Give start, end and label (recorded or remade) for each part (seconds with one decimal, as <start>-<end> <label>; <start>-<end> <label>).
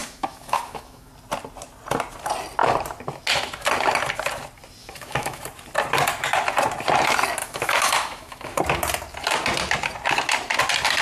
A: 0.0-1.1 remade; 1.1-4.8 recorded; 4.8-5.4 remade; 5.4-7.4 recorded; 7.4-8.6 remade; 8.6-11.0 recorded